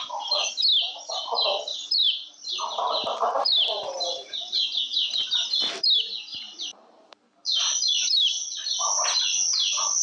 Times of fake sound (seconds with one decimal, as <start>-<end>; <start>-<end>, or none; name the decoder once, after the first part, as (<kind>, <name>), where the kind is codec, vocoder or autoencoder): 1.7-5.7 (vocoder, BigVGAN v2); 6.3-8.3